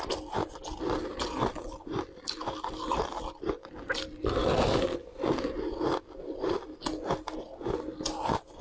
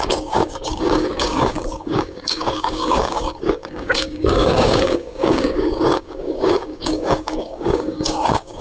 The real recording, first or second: first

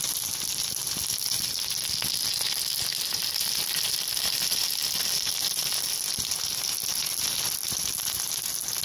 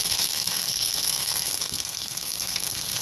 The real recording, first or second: first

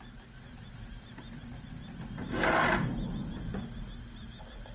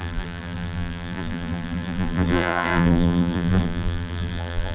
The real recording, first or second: first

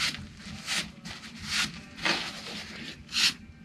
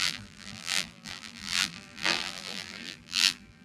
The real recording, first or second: first